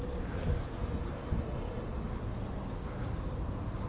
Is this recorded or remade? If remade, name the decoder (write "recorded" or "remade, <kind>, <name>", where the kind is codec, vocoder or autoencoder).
recorded